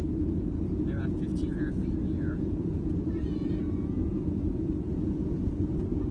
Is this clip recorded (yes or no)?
no